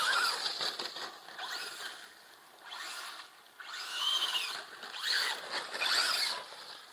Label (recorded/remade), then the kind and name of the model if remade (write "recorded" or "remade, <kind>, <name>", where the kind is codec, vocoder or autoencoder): recorded